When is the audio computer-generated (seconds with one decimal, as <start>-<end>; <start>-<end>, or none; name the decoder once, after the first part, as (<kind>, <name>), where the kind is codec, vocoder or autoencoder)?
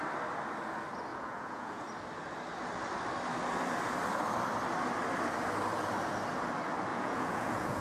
1.1-1.8 (vocoder, Vocos); 6.9-7.8